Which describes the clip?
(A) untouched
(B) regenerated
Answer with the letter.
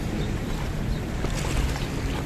A